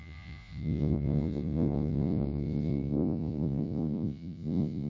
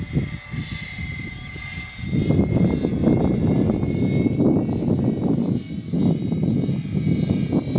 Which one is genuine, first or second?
second